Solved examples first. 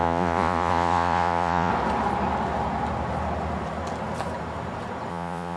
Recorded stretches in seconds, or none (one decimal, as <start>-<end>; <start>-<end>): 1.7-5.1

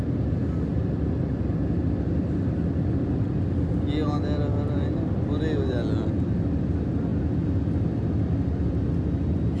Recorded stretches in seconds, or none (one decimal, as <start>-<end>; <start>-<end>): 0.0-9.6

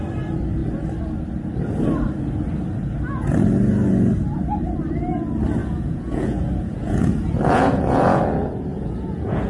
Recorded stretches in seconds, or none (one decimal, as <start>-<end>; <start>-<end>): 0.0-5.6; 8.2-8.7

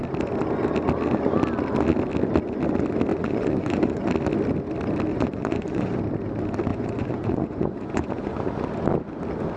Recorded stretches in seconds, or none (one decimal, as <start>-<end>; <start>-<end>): 0.0-3.1; 4.1-5.1; 6.0-6.7; 8.5-9.6